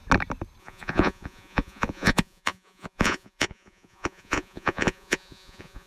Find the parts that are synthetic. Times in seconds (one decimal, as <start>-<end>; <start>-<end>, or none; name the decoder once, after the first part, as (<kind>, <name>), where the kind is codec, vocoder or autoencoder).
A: 0.6-5.9 (vocoder, Vocos)